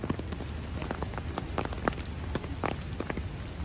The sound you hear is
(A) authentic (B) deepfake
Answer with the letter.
A